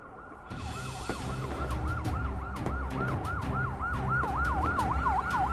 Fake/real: real